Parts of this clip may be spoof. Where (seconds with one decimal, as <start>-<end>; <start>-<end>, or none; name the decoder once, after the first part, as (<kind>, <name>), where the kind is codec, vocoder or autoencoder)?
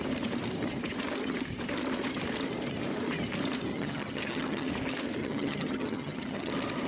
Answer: 3.7-4.7 (vocoder, HiFi-GAN); 5.2-6.5